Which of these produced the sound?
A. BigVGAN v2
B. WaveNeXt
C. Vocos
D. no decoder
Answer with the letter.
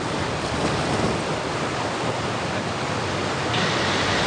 D